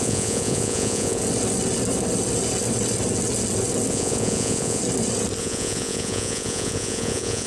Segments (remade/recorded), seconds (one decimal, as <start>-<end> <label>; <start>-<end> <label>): 0.0-1.2 remade; 1.2-3.9 recorded; 3.9-4.8 remade; 4.8-5.4 recorded; 5.4-7.5 remade